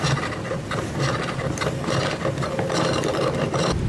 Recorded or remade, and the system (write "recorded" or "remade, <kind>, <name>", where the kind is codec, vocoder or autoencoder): remade, vocoder, BigVGAN v2